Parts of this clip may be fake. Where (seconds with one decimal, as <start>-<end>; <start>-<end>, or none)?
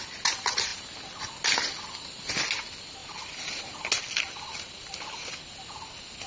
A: none